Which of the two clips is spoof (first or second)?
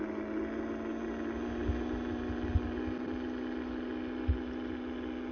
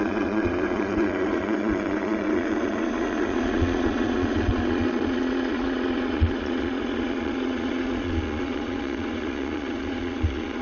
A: second